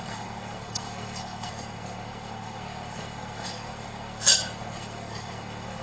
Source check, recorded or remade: remade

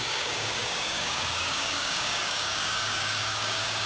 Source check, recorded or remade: remade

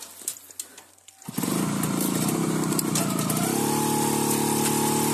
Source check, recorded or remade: recorded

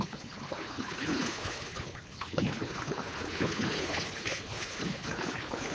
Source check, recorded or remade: remade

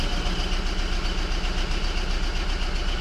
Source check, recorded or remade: recorded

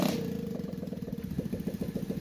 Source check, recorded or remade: recorded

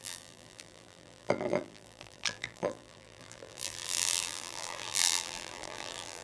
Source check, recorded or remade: remade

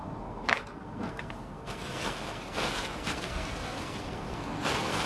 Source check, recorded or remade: remade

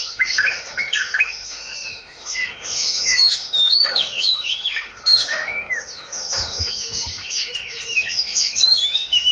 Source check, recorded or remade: remade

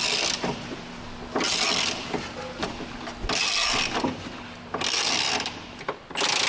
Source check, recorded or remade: recorded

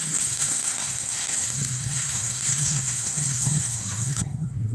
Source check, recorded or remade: remade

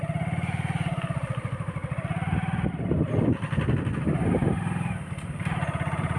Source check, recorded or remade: recorded